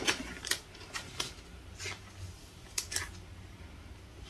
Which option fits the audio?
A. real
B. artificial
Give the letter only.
A